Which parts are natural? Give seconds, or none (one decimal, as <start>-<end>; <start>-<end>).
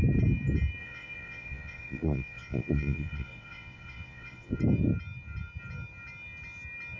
0.0-0.8; 4.5-7.0